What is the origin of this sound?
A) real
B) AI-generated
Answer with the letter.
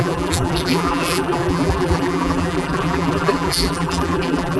B